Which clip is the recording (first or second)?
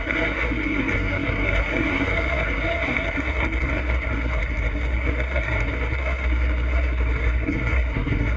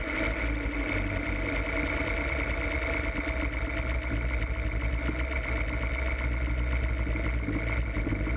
second